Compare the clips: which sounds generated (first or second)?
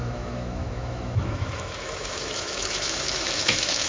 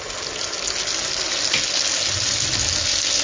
first